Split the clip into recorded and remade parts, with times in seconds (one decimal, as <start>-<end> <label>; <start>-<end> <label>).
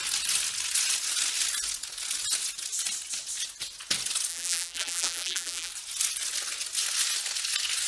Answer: 0.0-4.3 recorded; 4.3-5.7 remade; 5.7-7.9 recorded